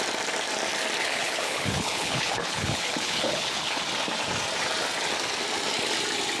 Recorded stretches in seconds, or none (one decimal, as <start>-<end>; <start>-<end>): 0.0-1.0; 3.8-6.4